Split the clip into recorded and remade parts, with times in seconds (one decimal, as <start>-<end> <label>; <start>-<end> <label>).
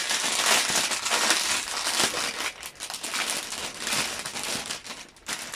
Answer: 0.0-5.6 recorded